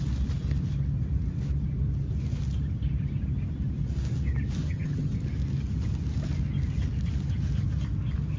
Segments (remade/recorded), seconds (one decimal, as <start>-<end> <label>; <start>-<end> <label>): 0.0-4.6 recorded; 4.6-5.2 remade; 5.2-8.4 recorded